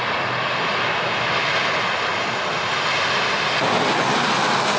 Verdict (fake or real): real